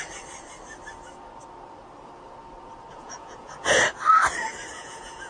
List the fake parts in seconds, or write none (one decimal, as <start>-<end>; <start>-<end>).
2.9-3.8; 4.7-5.3